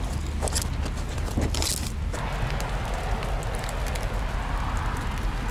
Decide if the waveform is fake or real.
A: real